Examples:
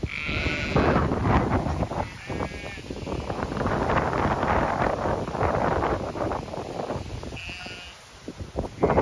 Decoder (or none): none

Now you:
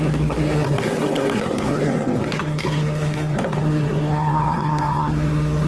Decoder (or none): codec, SNAC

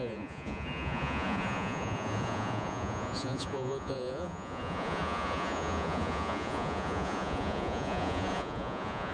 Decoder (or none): vocoder, Vocos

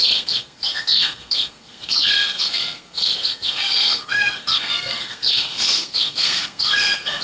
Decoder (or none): codec, SNAC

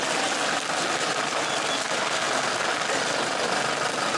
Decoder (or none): none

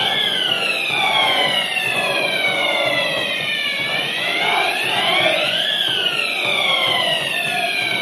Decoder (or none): vocoder, Vocos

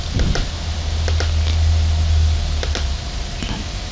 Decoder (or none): none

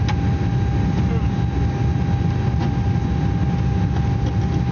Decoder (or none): none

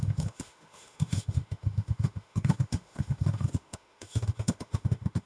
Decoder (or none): autoencoder, DAC-VAE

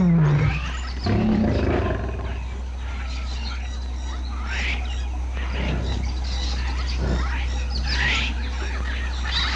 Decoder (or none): none